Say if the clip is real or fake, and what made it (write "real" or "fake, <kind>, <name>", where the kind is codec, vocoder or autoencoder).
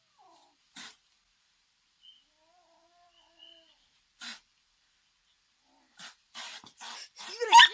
fake, vocoder, BigVGAN v2